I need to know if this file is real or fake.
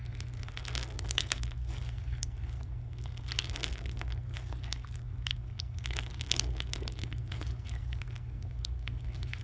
fake